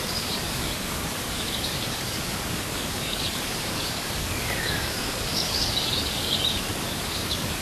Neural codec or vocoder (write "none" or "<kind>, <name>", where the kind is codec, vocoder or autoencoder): codec, DAC